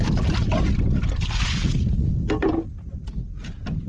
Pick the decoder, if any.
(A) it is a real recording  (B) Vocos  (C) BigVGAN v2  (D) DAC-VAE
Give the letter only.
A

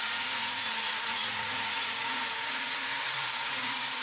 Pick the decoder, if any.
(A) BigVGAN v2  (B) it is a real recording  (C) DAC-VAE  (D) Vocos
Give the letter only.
D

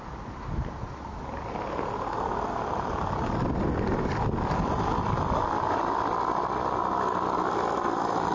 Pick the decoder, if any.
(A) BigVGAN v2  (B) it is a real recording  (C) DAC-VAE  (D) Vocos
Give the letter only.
B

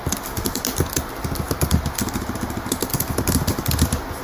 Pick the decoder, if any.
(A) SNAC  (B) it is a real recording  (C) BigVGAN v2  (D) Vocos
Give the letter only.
B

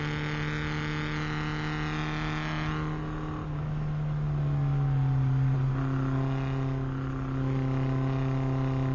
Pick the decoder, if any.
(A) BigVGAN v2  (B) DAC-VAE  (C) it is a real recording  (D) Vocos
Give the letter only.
C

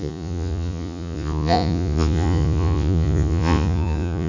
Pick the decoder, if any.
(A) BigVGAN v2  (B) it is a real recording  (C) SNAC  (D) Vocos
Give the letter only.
D